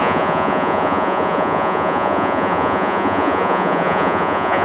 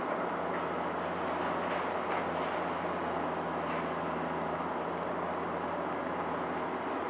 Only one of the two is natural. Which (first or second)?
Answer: second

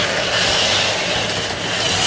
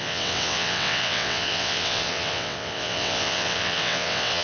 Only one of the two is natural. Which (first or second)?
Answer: first